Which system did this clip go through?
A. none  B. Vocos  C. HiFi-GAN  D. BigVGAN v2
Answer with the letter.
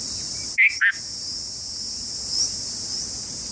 A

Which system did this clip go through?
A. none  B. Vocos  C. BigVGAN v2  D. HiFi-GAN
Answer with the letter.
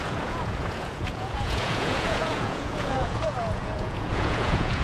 B